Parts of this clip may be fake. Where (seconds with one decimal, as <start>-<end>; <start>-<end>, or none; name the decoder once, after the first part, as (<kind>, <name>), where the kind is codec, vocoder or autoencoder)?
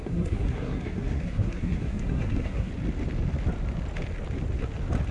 0.0-2.7 (codec, SNAC)